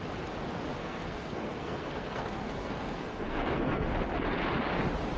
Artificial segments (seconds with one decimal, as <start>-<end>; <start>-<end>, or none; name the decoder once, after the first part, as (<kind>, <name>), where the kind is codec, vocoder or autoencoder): 0.8-3.9 (codec, SNAC)